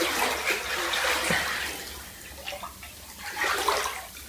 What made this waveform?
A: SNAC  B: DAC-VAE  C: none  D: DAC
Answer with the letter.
C